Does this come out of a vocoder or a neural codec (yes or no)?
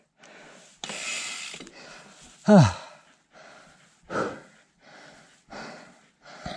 no